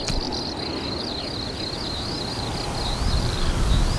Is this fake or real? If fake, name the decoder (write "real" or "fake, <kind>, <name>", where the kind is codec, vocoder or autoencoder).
real